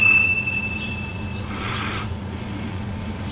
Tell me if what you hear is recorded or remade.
remade